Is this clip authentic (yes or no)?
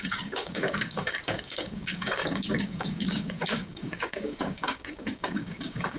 no